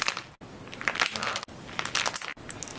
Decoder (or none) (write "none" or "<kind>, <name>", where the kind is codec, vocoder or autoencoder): none